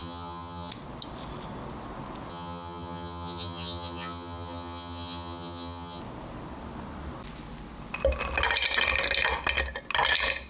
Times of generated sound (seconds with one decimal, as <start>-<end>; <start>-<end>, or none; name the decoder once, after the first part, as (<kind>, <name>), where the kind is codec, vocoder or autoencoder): 0.0-0.7 (vocoder, HiFi-GAN); 2.3-6.0